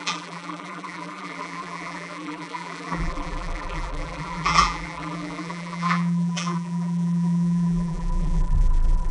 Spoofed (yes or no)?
yes